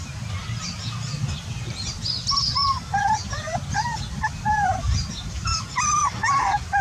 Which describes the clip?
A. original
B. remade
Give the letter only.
A